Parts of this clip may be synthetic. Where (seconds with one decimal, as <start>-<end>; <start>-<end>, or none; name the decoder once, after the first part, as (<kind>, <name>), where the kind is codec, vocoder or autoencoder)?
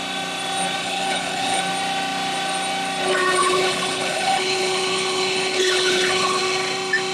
0.8-1.6 (codec, HILCodec); 3.4-6.4